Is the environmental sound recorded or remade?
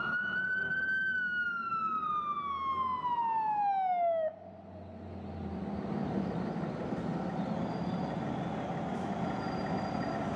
recorded